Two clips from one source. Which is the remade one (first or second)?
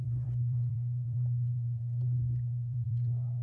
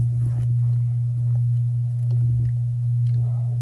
first